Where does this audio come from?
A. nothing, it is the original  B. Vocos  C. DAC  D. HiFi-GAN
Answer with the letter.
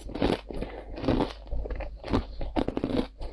A